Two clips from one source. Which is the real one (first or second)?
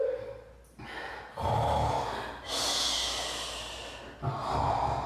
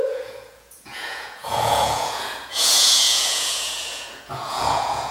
first